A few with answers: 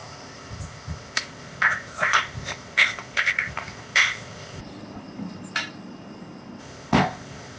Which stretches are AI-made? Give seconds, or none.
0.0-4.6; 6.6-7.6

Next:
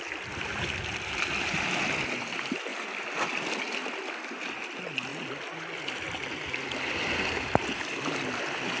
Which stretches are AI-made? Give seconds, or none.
none

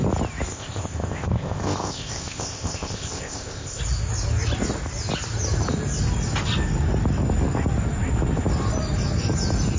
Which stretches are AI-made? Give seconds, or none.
0.5-3.8

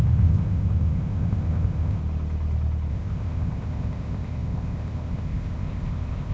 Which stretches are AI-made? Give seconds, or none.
0.0-2.0; 2.9-6.3